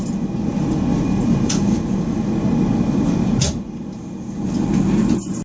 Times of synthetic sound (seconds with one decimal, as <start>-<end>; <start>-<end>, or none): 0.9-1.9